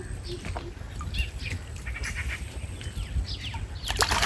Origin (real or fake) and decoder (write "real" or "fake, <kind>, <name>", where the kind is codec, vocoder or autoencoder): real